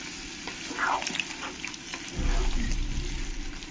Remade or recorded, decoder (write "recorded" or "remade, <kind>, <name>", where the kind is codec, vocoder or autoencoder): recorded